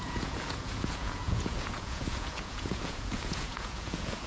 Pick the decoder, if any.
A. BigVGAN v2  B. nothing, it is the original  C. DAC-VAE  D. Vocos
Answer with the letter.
D